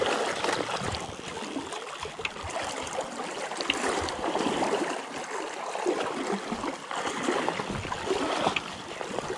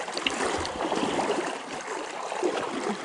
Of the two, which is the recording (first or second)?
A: first